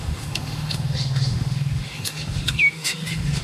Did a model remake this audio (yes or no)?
yes